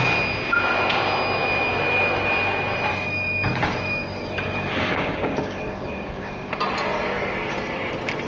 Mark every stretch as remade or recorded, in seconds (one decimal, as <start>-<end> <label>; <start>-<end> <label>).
0.0-2.9 recorded; 2.9-6.5 remade; 6.5-8.3 recorded